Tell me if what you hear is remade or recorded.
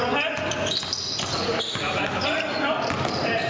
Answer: recorded